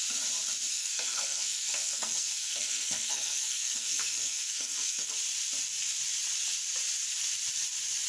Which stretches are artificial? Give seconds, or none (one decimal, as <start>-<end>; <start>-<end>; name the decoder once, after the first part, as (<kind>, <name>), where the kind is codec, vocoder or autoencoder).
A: 0.7-5.1 (codec, SNAC)